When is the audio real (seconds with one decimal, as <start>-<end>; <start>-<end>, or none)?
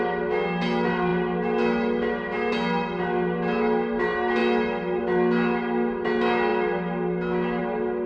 0.0-8.1